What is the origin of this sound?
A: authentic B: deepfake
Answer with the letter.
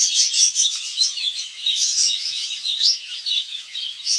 B